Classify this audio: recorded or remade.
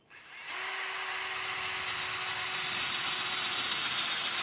recorded